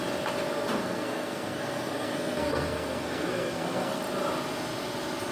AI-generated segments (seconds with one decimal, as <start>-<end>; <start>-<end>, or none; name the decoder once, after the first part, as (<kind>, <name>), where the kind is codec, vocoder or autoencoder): 0.8-4.0 (codec, SNAC)